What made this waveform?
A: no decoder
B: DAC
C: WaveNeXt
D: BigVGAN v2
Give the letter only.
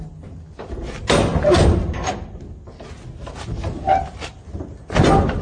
A